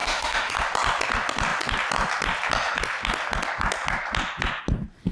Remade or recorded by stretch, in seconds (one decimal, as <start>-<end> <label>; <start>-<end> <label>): 0.0-0.5 remade; 0.5-5.1 recorded